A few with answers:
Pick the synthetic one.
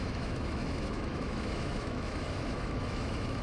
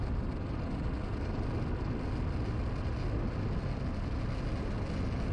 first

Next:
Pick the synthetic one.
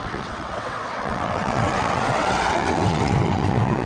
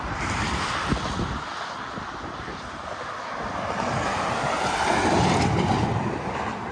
first